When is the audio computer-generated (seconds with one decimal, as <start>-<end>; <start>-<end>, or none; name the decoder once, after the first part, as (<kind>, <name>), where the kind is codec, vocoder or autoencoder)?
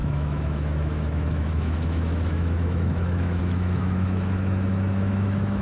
0.0-5.6 (autoencoder, DAC-VAE)